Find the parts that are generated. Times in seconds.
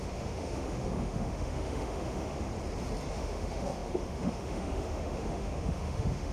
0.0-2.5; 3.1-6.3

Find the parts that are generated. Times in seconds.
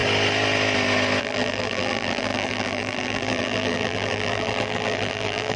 1.2-5.6